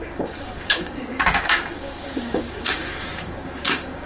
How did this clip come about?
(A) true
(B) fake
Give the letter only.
B